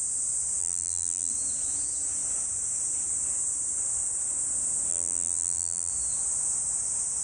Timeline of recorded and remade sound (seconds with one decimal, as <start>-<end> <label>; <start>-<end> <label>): 0.0-0.6 recorded; 0.6-1.3 remade; 1.3-4.9 recorded; 4.9-5.9 remade; 5.9-7.2 recorded